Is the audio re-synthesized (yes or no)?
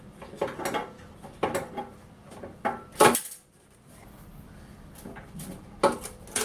no